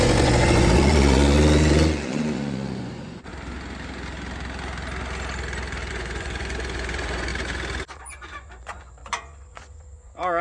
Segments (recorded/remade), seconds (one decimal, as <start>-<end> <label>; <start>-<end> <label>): 0.0-3.3 remade; 3.3-5.9 recorded; 5.9-7.3 remade; 7.3-8.0 recorded; 8.0-10.4 remade